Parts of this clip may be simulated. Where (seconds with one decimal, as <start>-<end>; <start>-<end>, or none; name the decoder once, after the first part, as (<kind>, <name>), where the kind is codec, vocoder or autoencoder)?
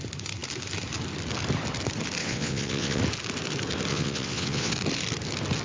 2.2-3.0 (vocoder, WaveNeXt); 3.9-4.7